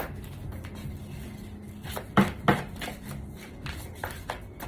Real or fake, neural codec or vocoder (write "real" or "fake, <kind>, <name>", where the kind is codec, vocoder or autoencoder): real